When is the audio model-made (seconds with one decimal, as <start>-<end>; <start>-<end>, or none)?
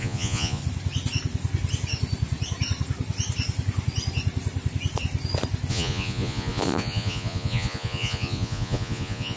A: 0.0-0.6; 5.7-9.4